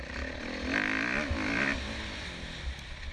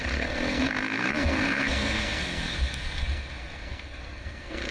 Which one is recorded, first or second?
first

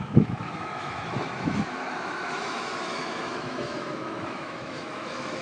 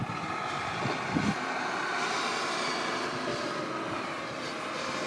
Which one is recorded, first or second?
second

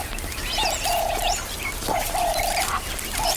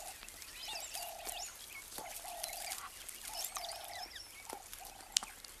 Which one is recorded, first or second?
second